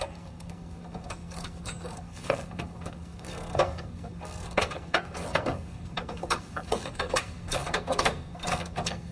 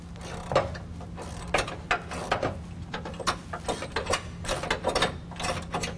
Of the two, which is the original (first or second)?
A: second